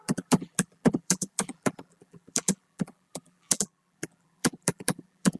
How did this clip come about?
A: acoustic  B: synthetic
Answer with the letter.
B